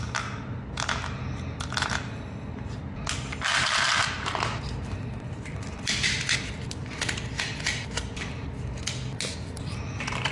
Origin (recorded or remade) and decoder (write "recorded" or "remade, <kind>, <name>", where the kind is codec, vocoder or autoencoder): recorded